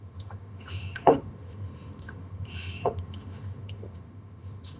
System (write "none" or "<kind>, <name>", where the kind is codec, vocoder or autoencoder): autoencoder, DAC-VAE